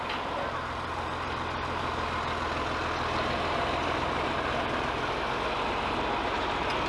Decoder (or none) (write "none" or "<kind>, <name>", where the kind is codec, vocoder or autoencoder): none